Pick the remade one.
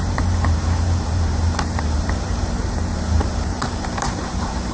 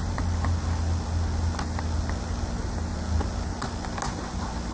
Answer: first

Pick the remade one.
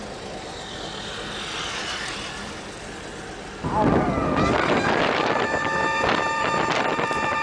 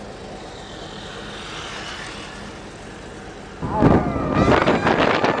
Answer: first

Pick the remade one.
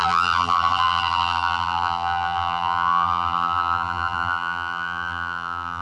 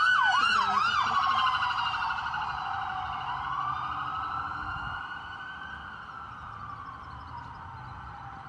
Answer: first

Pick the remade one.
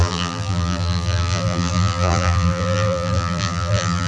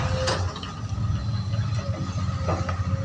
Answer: first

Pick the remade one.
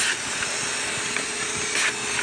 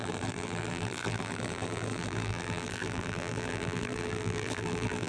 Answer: second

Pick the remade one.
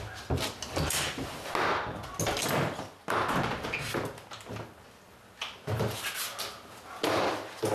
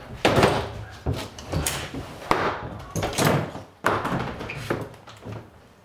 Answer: second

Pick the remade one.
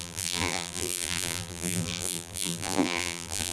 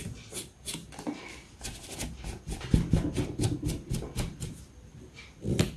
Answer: first